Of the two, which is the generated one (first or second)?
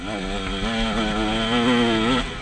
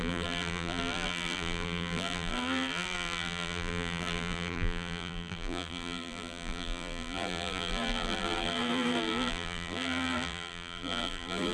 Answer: second